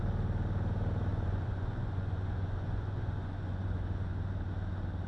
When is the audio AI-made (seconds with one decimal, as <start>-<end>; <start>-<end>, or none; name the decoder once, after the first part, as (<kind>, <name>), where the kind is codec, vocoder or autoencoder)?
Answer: 1.1-4.2 (vocoder, Vocos)